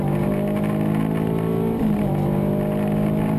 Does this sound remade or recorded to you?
recorded